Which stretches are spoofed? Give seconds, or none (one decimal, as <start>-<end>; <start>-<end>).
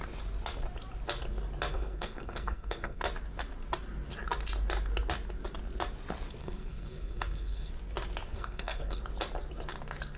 1.7-3.0; 6.4-7.7; 8.3-9.0